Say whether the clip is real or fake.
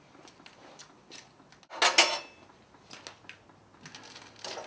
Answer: real